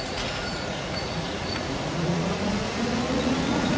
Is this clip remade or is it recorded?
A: remade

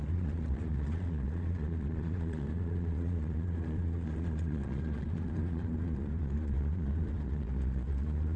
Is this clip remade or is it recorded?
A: remade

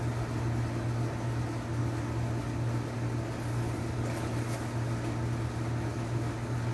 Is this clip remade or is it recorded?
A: recorded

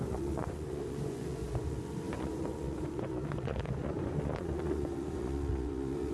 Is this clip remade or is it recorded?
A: remade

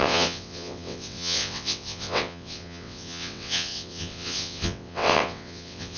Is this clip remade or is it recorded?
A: remade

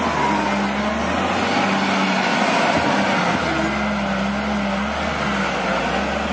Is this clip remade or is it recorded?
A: recorded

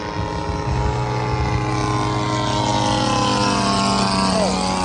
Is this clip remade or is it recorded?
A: recorded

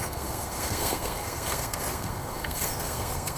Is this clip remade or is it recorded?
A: remade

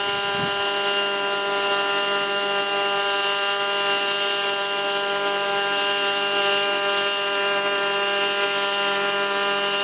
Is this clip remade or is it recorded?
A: recorded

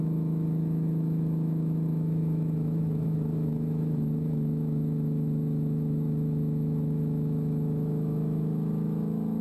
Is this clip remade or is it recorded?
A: remade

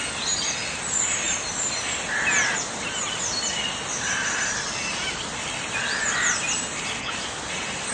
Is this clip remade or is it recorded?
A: recorded